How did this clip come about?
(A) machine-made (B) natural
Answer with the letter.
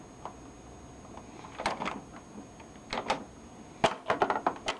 B